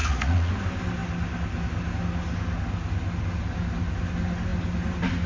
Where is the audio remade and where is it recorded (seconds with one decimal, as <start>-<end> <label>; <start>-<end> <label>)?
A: 0.0-0.5 remade; 0.5-5.3 recorded